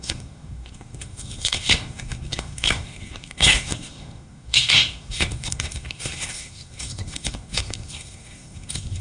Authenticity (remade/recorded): remade